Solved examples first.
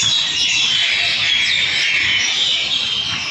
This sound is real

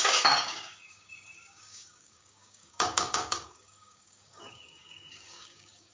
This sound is fake